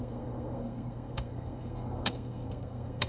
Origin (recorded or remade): remade